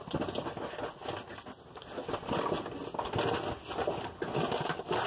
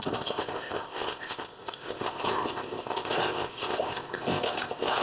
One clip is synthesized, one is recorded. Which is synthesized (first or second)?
second